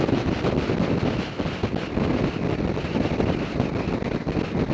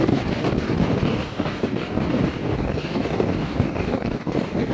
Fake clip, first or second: second